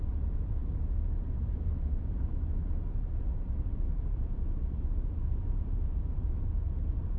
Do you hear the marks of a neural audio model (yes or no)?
yes